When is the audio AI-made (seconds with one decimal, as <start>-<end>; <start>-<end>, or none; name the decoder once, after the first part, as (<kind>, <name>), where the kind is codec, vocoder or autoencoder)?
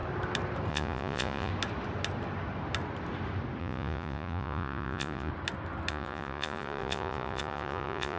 0.7-1.5 (vocoder, Vocos); 3.6-5.3; 5.9-8.2